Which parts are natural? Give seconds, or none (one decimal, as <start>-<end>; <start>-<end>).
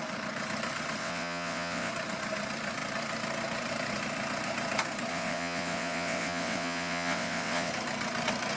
0.0-1.0; 1.9-5.1; 7.7-8.6